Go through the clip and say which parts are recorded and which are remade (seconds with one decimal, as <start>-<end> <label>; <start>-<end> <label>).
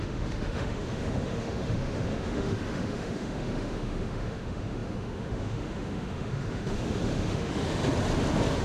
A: 0.0-7.8 remade; 7.8-8.6 recorded